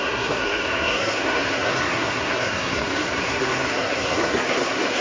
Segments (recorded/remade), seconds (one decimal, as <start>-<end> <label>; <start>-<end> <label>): 0.0-5.0 remade